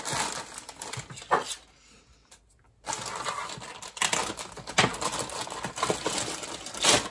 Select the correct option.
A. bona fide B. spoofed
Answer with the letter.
A